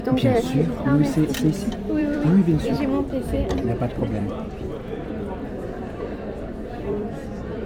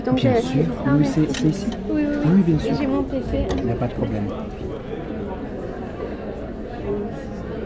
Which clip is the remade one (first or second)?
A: first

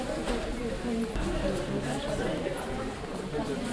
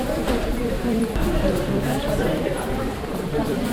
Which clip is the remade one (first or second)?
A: second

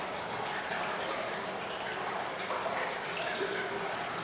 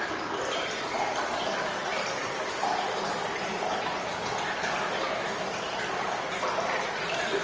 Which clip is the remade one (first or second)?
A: second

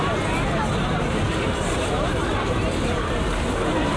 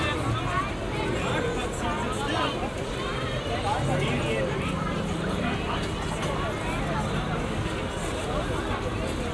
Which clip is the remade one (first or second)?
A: first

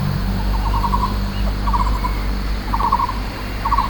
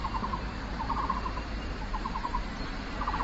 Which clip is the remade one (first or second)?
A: second